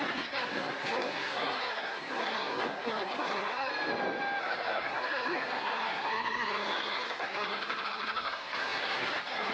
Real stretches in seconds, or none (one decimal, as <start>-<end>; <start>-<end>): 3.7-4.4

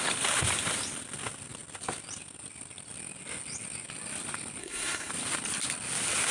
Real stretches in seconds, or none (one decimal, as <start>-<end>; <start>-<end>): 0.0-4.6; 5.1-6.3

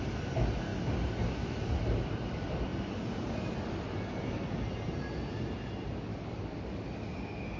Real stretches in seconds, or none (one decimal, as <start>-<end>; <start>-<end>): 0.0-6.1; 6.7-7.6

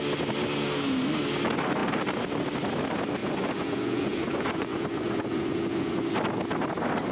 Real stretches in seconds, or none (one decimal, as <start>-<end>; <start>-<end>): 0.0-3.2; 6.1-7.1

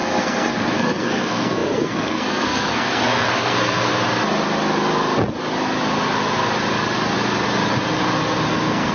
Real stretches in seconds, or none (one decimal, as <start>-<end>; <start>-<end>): 3.9-8.5

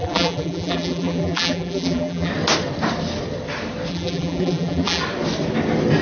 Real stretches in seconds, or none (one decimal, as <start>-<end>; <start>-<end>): 2.3-3.9; 5.0-6.0

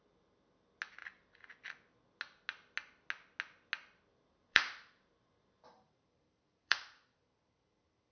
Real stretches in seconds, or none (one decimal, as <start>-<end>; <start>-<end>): 0.0-4.1; 7.3-8.1